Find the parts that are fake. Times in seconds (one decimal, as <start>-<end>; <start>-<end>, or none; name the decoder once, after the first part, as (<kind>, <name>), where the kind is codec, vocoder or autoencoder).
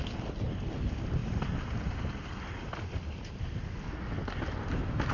none